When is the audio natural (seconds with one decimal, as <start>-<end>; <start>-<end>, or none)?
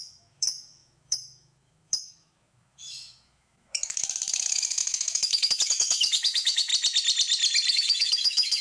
6.7-7.7